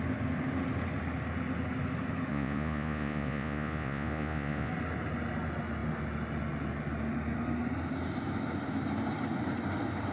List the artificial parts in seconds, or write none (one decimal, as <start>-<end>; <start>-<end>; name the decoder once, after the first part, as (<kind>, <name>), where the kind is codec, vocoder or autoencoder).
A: 2.3-4.7 (vocoder, Vocos)